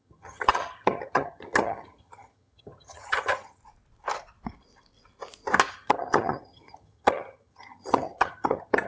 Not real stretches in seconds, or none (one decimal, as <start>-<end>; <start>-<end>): 0.0-3.6; 5.7-8.9